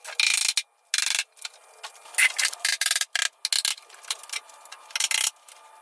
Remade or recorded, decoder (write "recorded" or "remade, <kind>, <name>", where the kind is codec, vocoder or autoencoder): recorded